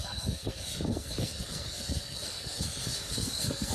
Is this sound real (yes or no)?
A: no